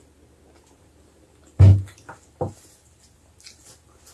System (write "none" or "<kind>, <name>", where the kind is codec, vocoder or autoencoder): none